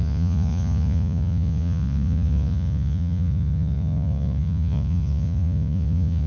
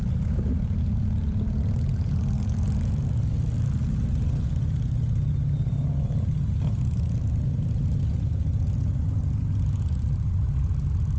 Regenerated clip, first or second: first